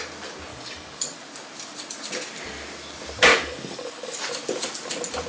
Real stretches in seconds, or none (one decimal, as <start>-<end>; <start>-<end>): 0.0-0.5; 1.2-3.3; 4.2-5.3